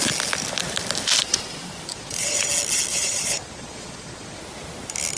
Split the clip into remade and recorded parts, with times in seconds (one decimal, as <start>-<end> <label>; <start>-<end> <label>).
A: 0.0-1.9 recorded; 1.9-2.5 remade; 2.5-2.9 recorded; 2.9-4.4 remade; 4.4-5.2 recorded